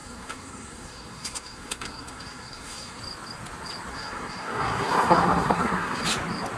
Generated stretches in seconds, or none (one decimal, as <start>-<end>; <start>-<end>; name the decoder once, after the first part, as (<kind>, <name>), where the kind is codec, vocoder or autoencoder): 0.0-3.0 (codec, SNAC); 3.9-6.0